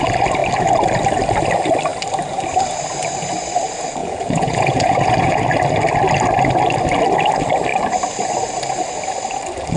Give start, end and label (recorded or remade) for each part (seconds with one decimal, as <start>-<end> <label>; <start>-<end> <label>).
0.0-4.0 recorded; 4.0-5.4 remade; 5.4-9.8 recorded